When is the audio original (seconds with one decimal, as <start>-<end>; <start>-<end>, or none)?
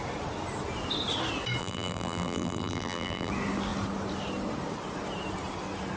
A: 0.0-1.6; 3.3-6.0